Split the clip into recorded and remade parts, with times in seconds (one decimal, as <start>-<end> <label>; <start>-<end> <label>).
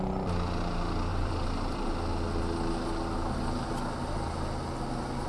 0.0-1.1 recorded; 1.1-1.9 remade; 1.9-5.3 recorded